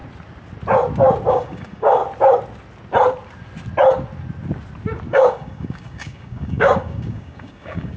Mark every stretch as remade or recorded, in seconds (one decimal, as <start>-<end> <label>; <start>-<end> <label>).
0.0-1.3 recorded; 1.3-2.0 remade; 2.0-5.1 recorded; 5.1-8.0 remade